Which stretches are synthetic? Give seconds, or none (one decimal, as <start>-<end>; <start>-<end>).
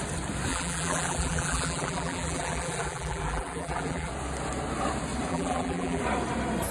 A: 0.5-4.1; 5.3-6.0